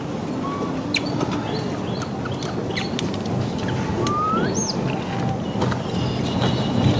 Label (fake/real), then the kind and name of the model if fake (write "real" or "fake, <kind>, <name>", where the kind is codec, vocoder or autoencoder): real